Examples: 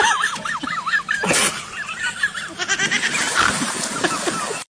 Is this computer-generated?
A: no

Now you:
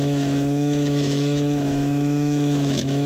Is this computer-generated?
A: yes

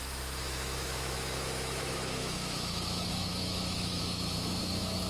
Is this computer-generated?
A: yes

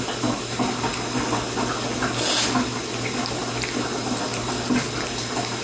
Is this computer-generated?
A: no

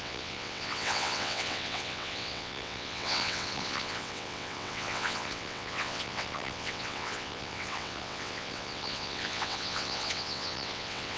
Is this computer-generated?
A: yes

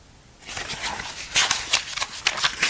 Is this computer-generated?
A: no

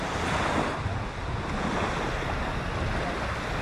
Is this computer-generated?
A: no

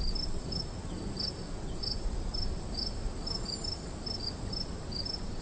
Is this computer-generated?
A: no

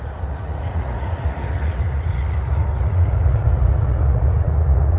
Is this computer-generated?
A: yes